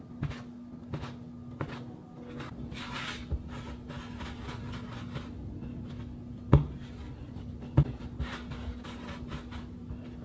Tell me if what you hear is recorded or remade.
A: recorded